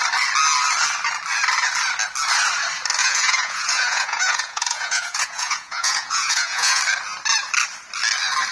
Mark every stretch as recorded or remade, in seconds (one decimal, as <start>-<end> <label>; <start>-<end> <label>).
0.0-3.0 recorded; 3.0-6.8 remade; 6.8-8.5 recorded